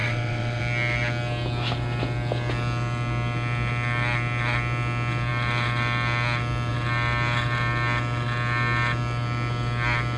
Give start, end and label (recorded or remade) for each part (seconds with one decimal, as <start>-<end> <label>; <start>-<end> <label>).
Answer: 0.0-0.6 remade; 0.6-10.2 recorded